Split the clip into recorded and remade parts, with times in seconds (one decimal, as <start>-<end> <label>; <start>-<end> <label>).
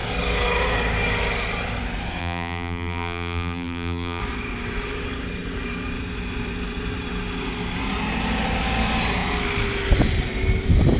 0.0-2.2 recorded; 2.2-4.2 remade; 4.2-11.0 recorded